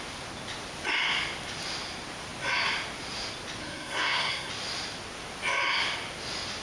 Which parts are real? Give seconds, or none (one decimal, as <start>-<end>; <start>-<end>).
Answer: 0.0-3.6; 4.5-6.6